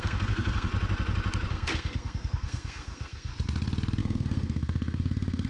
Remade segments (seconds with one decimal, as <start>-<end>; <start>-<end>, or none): 0.0-0.7; 1.5-3.3; 4.0-5.5

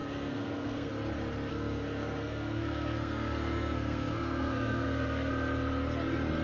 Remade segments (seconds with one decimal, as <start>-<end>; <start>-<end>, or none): 0.0-0.9; 1.5-5.3

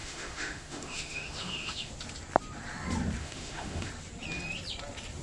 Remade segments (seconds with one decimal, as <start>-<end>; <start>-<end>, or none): 0.0-1.9; 3.2-3.9

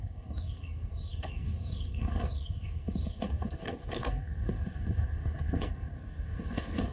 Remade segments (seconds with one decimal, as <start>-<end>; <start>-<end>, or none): 0.0-6.9